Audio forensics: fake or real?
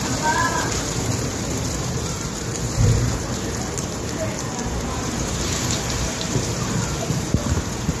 fake